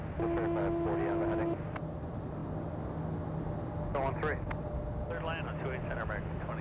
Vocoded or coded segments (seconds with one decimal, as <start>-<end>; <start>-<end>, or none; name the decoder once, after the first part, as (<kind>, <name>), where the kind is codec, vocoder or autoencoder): none